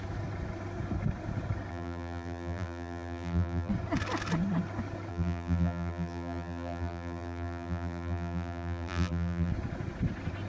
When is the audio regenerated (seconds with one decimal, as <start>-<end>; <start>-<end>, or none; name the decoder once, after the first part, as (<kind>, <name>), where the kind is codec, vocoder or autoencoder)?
1.7-3.7 (vocoder, BigVGAN v2); 5.1-9.5